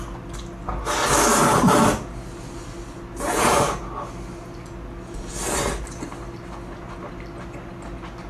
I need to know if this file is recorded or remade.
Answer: recorded